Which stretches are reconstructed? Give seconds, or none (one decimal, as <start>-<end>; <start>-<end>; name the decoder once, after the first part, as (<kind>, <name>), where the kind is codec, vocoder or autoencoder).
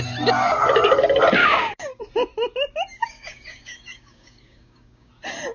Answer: 1.4-2.0 (codec, DAC); 3.0-5.1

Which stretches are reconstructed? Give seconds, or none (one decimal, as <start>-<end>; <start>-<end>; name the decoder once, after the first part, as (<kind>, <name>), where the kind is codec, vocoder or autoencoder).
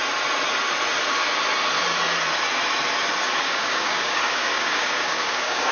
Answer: 3.4-5.7 (codec, DAC)